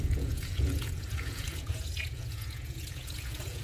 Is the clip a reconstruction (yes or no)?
yes